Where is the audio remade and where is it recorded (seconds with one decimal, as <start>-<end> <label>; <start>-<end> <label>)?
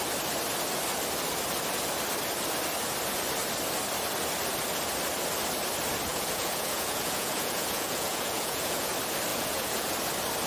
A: 0.0-6.1 recorded; 6.1-8.9 remade; 8.9-9.3 recorded; 9.3-9.9 remade; 9.9-10.5 recorded